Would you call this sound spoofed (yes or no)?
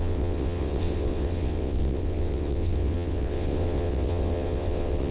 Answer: yes